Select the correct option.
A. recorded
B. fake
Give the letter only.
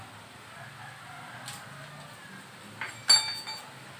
A